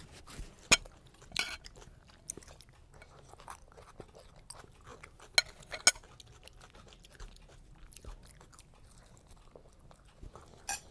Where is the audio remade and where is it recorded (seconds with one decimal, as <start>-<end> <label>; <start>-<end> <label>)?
0.0-10.9 recorded